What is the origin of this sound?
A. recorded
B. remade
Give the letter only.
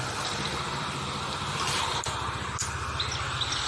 A